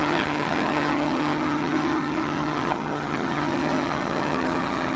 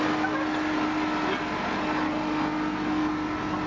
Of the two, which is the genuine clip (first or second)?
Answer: second